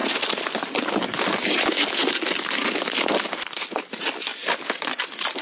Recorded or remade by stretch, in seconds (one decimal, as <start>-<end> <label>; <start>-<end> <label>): 0.0-5.4 recorded